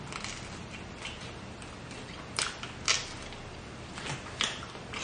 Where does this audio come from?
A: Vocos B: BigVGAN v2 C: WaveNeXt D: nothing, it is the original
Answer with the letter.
D